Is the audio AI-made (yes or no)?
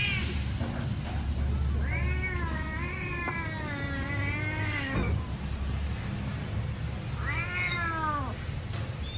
no